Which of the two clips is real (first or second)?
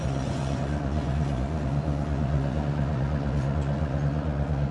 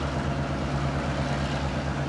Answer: second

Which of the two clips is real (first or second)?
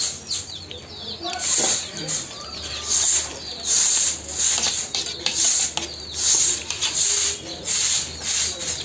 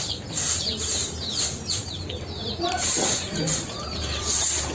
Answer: first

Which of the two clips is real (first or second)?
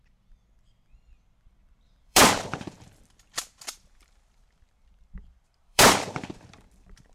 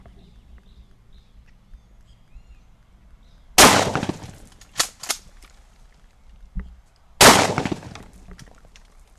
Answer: second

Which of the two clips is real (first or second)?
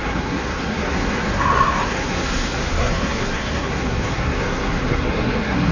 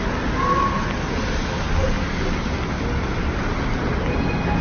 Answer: second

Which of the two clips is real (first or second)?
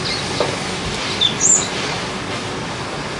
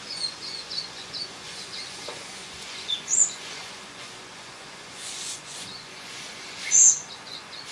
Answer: first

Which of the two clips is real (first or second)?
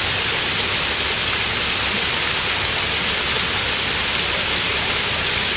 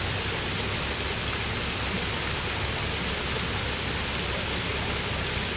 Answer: second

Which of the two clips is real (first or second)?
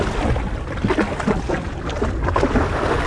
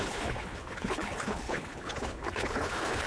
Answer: first